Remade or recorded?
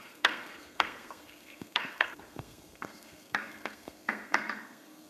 remade